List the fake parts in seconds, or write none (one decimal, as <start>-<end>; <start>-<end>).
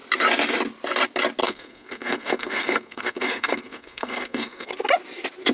1.4-4.7